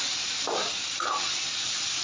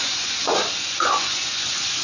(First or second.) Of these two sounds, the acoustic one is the first